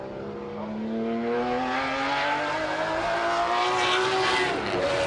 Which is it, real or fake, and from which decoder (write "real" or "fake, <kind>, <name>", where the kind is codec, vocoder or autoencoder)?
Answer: real